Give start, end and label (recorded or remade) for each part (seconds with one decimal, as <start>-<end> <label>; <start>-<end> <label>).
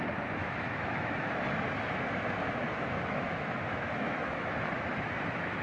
0.0-0.4 recorded; 0.4-1.3 remade; 1.3-2.7 recorded; 2.7-5.6 remade